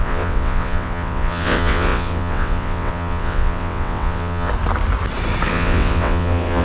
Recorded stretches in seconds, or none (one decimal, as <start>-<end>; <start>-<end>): 4.5-5.5